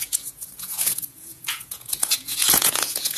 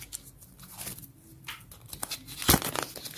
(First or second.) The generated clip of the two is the first